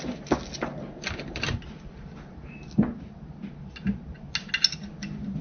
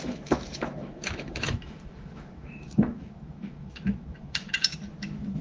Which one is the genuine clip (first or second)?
first